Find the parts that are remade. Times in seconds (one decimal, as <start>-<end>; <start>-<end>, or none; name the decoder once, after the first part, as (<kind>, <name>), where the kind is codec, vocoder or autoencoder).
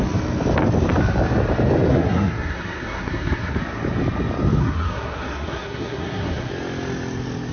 1.9-3.6 (codec, SNAC); 4.6-6.5